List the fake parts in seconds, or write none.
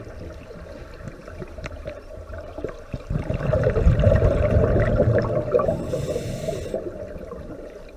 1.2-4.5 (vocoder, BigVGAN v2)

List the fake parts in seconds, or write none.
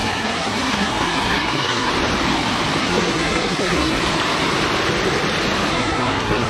0.0-1.9 (codec, SNAC); 2.8-4.0; 5.7-6.5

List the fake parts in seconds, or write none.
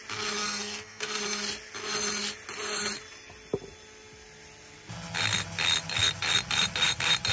0.4-1.2 (codec, SNAC)